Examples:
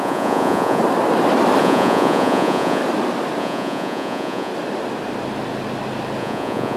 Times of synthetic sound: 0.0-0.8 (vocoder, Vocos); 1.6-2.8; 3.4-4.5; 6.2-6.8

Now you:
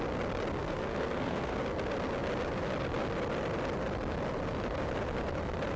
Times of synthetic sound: 0.6-1.6 (codec, SNAC)

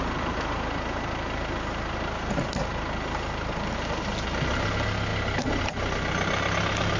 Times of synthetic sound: none

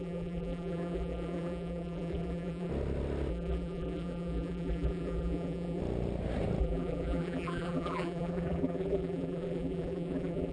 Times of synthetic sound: 0.0-2.7 (vocoder, BigVGAN v2); 3.3-5.8; 6.6-10.5

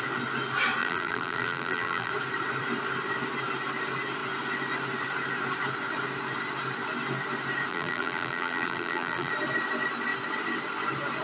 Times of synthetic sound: 0.8-2.1 (vocoder, BigVGAN v2); 7.7-9.3

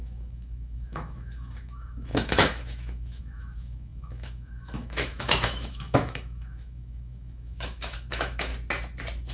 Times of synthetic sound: 0.0-8.5 (autoencoder, DAC-VAE)